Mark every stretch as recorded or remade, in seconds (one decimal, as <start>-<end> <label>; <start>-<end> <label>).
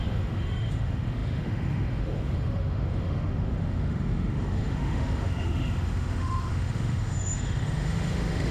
0.0-8.5 remade